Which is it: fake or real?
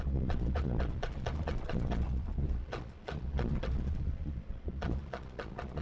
fake